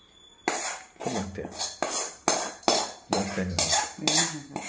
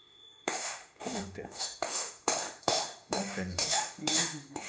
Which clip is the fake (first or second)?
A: second